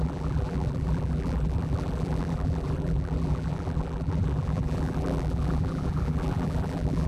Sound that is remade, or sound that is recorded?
remade